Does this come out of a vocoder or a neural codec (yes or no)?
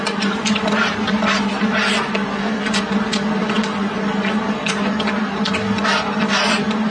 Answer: no